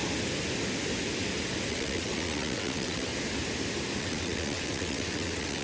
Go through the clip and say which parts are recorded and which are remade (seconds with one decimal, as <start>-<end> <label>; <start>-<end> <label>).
0.0-1.7 recorded; 1.7-3.1 remade; 3.1-4.0 recorded; 4.0-5.6 remade